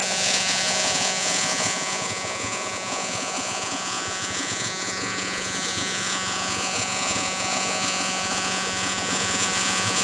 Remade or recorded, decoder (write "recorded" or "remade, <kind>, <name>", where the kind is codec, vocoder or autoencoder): remade, vocoder, Vocos